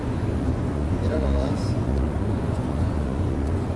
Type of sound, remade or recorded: remade